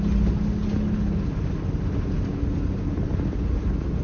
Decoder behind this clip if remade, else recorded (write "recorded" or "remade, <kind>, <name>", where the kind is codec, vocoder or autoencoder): recorded